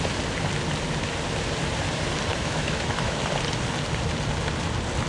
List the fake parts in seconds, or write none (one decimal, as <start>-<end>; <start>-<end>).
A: 2.3-3.2